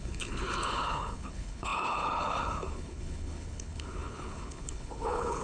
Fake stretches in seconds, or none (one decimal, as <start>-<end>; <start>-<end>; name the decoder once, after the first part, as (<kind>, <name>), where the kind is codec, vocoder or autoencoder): 0.0-5.4 (codec, HILCodec)